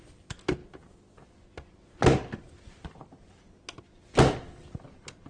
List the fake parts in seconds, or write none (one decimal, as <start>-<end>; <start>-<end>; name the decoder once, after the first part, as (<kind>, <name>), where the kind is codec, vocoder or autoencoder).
none